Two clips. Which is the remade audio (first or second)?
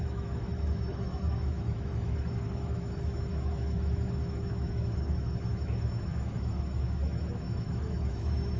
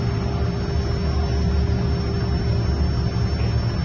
first